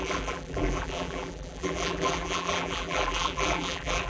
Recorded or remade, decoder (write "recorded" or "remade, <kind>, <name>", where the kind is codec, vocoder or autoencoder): remade, vocoder, BigVGAN v2